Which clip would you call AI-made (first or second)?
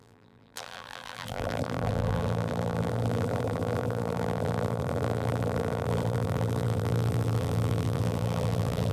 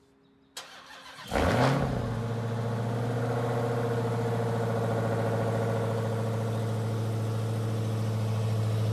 first